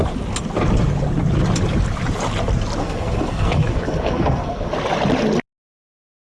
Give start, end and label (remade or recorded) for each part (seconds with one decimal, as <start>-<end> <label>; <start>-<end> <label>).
0.0-2.8 recorded; 2.8-4.7 remade; 4.7-6.3 recorded

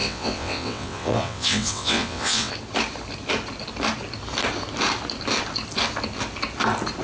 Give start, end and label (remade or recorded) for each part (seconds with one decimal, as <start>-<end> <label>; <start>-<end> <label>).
0.0-2.5 remade; 2.5-7.0 recorded

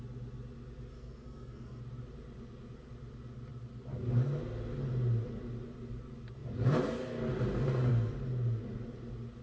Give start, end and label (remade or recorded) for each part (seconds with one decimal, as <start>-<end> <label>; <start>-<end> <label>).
0.0-0.9 recorded; 0.9-1.8 remade; 1.8-9.4 recorded

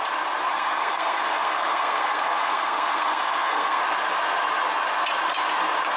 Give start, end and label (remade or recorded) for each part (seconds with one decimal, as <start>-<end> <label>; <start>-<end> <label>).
0.0-0.5 recorded; 0.5-3.8 remade; 3.8-6.0 recorded

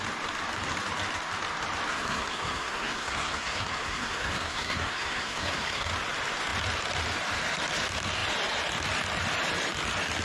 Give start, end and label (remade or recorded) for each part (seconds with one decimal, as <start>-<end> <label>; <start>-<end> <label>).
0.0-1.9 recorded; 1.9-5.9 remade; 5.9-10.2 recorded

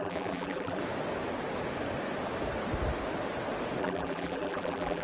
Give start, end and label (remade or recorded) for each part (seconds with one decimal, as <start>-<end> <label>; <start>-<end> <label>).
0.0-0.8 remade; 0.8-3.8 recorded; 3.8-5.0 remade

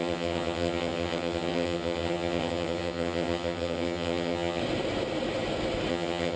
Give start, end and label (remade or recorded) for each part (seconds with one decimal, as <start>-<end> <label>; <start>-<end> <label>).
0.0-4.6 remade; 4.6-5.9 recorded; 5.9-6.4 remade